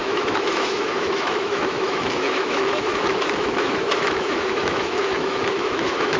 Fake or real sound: fake